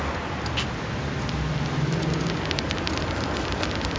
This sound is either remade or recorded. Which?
recorded